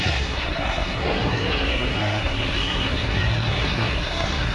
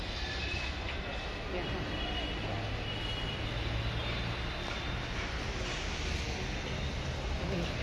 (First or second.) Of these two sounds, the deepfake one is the first